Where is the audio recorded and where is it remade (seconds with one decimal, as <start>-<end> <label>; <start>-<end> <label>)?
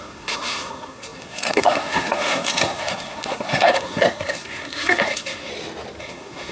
0.0-5.5 remade; 5.5-6.0 recorded; 6.0-6.5 remade